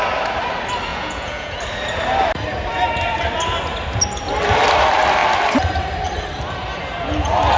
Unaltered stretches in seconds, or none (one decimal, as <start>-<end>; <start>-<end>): 0.0-0.9; 1.6-7.6